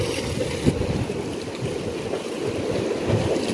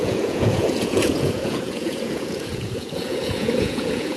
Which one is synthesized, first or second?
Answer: second